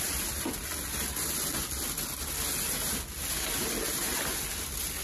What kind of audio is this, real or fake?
real